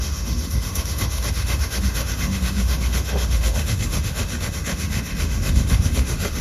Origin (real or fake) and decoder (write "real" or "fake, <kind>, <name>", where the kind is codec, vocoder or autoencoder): fake, autoencoder, DAC-VAE